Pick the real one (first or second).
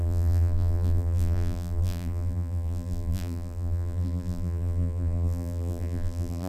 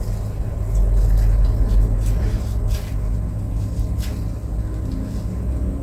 second